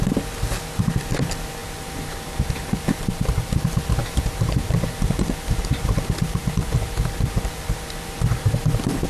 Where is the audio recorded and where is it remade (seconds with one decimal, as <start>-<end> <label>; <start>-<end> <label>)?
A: 0.0-1.6 recorded; 1.6-3.6 remade; 3.6-4.0 recorded; 4.0-8.6 remade; 8.6-9.1 recorded

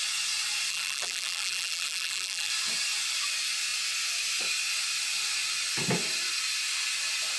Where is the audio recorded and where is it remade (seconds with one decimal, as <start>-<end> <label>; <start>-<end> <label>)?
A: 0.0-0.7 recorded; 0.7-2.5 remade; 2.5-7.4 recorded

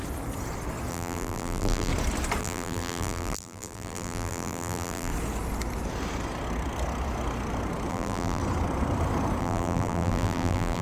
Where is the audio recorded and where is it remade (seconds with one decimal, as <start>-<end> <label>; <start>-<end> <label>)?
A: 0.0-0.9 recorded; 0.9-1.9 remade; 1.9-2.4 recorded; 2.4-5.1 remade; 5.1-7.9 recorded; 7.9-8.4 remade; 8.4-9.4 recorded; 9.4-10.8 remade

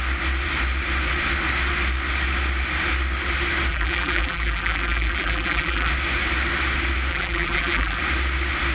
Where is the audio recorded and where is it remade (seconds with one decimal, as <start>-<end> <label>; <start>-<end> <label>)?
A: 0.0-3.7 recorded; 3.7-5.9 remade; 5.9-7.1 recorded; 7.1-8.0 remade; 8.0-8.7 recorded

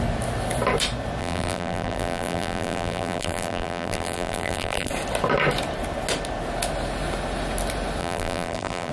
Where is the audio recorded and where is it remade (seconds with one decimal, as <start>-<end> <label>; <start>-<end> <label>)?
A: 0.0-1.2 recorded; 1.2-4.9 remade; 4.9-8.0 recorded; 8.0-8.9 remade

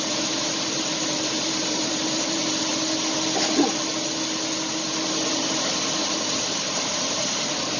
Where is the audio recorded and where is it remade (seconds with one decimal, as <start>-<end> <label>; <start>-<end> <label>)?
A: 0.0-2.7 remade; 2.7-6.1 recorded; 6.1-7.8 remade

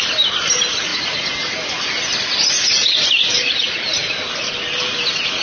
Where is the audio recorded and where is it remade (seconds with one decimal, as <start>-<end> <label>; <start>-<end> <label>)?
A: 0.0-5.4 recorded